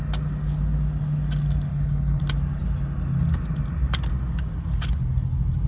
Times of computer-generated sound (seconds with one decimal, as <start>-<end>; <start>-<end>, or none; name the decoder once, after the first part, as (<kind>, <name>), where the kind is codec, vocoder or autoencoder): 1.7-2.2 (codec, HILCodec)